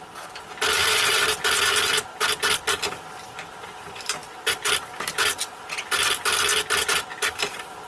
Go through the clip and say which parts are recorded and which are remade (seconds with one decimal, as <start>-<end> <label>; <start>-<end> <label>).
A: 0.0-7.9 recorded